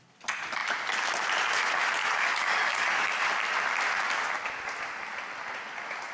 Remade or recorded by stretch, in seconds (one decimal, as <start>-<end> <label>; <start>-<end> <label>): 0.0-2.0 recorded; 2.0-3.3 remade; 3.3-6.1 recorded